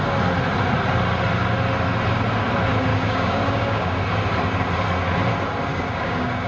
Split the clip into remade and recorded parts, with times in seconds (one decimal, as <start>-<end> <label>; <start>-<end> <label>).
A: 0.0-2.9 recorded; 2.9-4.0 remade; 4.0-5.7 recorded; 5.7-6.5 remade